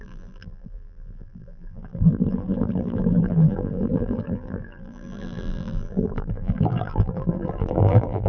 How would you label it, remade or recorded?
remade